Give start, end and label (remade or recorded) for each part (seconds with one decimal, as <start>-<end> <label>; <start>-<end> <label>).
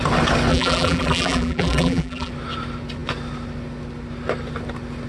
0.0-0.5 recorded; 0.5-2.3 remade; 2.3-5.1 recorded